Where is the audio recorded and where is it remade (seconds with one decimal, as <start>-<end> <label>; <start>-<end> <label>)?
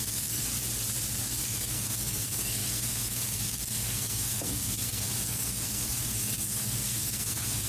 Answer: 0.0-0.5 remade; 0.5-1.2 recorded; 1.2-7.7 remade